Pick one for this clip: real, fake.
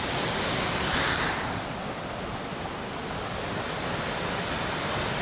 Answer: real